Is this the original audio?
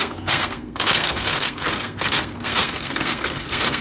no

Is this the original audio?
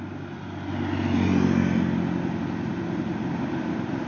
yes